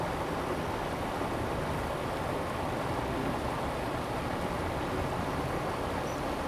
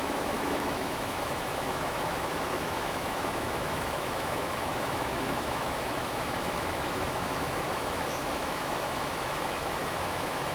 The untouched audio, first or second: first